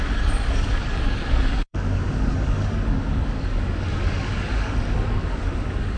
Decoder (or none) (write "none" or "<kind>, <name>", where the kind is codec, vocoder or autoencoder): codec, DAC